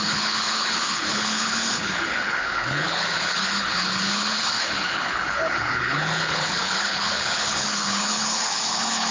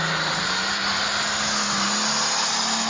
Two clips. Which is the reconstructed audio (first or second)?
first